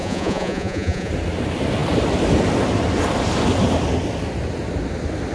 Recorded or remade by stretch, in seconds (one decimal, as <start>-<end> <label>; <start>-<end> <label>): 0.0-1.1 remade; 1.1-5.3 recorded